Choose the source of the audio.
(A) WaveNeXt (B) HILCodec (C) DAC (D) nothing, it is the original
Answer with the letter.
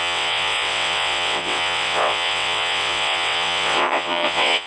A